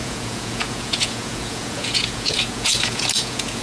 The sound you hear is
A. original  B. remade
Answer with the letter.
B